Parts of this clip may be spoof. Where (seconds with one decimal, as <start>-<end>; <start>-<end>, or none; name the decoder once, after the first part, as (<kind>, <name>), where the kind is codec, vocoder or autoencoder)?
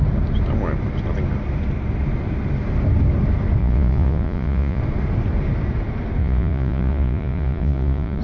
3.6-4.8 (vocoder, Vocos); 6.2-8.2